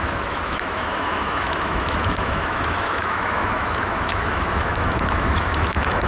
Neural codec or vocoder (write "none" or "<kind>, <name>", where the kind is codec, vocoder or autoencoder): autoencoder, DAC-VAE